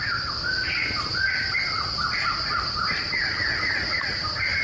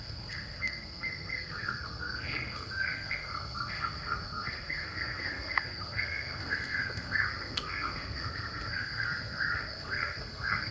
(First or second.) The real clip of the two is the first